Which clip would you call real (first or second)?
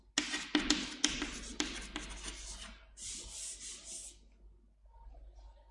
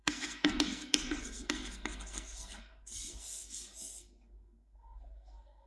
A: first